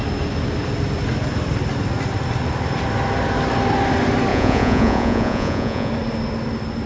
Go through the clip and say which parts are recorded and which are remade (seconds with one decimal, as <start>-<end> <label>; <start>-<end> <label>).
0.0-4.3 recorded; 4.3-5.9 remade; 5.9-6.9 recorded